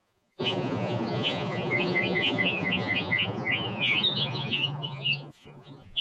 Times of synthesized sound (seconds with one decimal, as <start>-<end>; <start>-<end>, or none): 0.0-6.0